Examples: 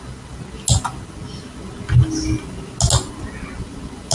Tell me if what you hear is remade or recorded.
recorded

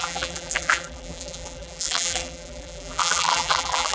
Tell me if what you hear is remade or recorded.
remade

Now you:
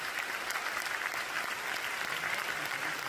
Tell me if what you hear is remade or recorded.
remade